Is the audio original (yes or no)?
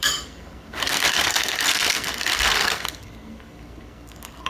no